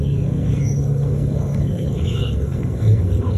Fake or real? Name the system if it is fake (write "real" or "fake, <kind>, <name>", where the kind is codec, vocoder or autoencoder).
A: fake, codec, SNAC